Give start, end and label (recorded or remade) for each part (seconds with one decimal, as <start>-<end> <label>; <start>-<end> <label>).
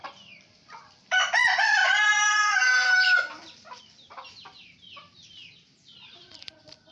0.0-6.9 remade